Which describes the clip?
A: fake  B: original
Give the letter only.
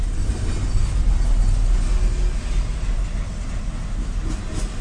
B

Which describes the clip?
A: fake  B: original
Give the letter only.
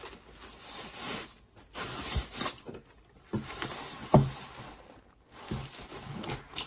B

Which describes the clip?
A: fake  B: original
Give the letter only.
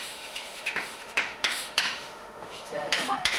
A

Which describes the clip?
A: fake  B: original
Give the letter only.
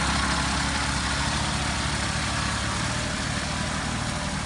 B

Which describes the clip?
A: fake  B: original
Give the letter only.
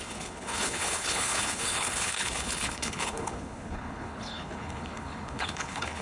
A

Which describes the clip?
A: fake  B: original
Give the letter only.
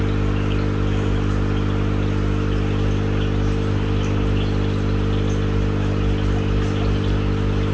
B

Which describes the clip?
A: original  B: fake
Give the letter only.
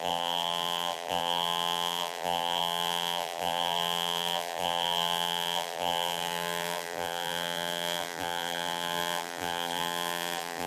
B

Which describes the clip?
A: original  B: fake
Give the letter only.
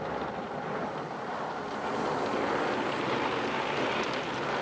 A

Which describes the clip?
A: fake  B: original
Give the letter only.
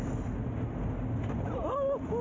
B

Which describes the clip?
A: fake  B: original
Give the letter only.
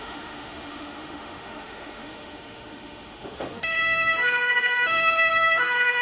A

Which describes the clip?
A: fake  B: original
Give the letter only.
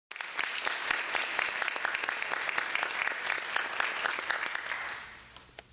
B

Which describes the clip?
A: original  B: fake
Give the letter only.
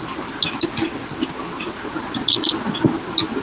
A